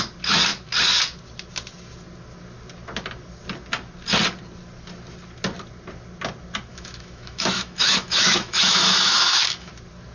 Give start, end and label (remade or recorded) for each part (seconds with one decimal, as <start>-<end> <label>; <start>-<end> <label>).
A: 0.0-6.7 recorded; 6.7-9.7 remade; 9.7-10.1 recorded